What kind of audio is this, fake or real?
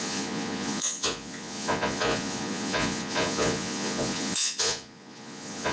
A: fake